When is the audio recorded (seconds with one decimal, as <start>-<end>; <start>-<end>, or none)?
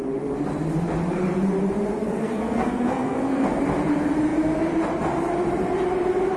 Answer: 0.0-2.0; 3.6-6.4